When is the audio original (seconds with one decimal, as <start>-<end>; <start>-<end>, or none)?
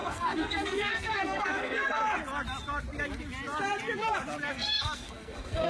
2.0-4.5